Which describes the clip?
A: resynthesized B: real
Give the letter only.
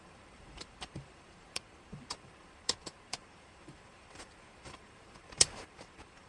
A